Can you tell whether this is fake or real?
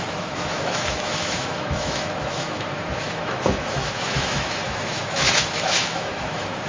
fake